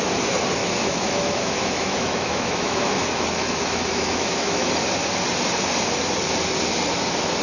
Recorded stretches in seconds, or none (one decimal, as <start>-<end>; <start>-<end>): 0.0-0.6; 4.7-7.4